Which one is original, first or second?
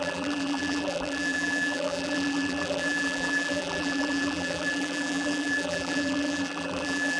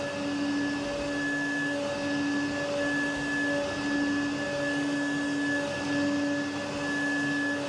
second